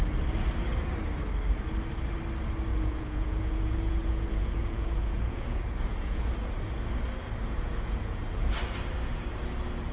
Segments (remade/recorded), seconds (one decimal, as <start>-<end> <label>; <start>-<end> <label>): 0.0-2.7 recorded; 2.7-6.5 remade; 6.5-7.4 recorded; 7.4-8.5 remade; 8.5-9.9 recorded